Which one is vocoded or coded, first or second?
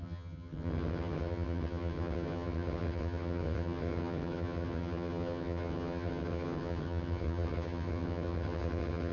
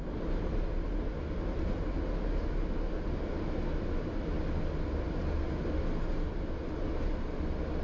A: first